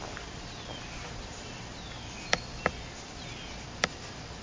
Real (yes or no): yes